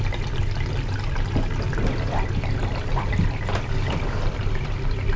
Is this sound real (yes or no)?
yes